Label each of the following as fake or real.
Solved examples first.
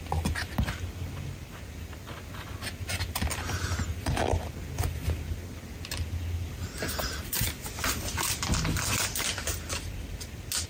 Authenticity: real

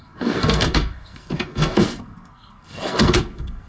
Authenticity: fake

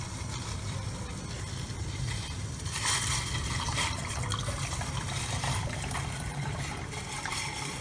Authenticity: fake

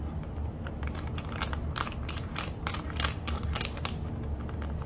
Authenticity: real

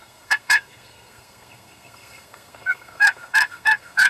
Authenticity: fake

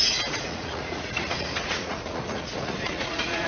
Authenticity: fake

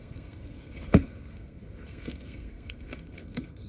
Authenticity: fake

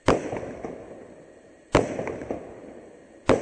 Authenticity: real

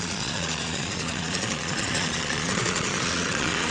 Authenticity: fake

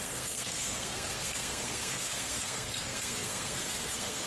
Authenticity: fake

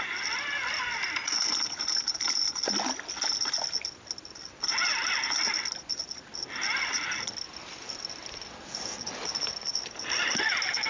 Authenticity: real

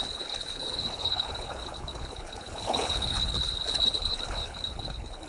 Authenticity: fake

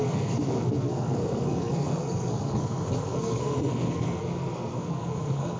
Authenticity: fake